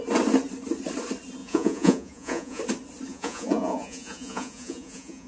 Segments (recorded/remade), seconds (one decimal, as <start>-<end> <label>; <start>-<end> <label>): 0.0-1.4 recorded; 1.4-2.6 remade; 2.6-3.1 recorded; 3.1-5.3 remade